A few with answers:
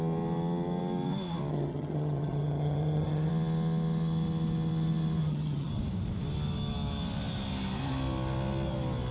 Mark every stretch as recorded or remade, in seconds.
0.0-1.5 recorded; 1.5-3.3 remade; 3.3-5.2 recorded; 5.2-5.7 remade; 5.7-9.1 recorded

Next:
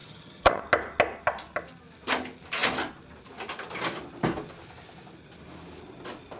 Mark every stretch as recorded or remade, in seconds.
0.0-0.6 remade; 0.6-6.4 recorded

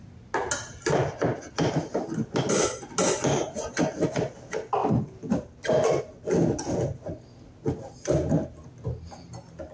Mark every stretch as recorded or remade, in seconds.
0.0-9.7 recorded

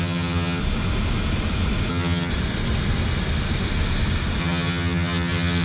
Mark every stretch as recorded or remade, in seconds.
0.0-0.6 remade; 0.6-1.9 recorded; 1.9-2.3 remade; 2.3-4.4 recorded; 4.4-5.6 remade

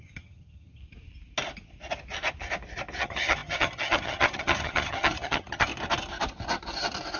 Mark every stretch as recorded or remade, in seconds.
0.0-0.8 remade; 0.8-3.0 recorded; 3.0-5.7 remade; 5.7-7.2 recorded

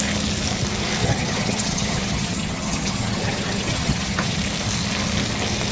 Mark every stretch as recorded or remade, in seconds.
0.0-1.0 recorded; 1.0-4.4 remade; 4.4-5.7 recorded

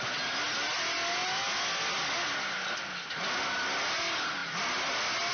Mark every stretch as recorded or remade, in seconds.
0.0-5.3 recorded

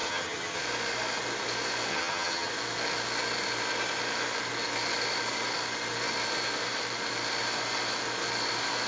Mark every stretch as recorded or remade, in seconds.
0.0-0.6 remade; 0.6-1.9 recorded; 1.9-2.5 remade; 2.5-8.9 recorded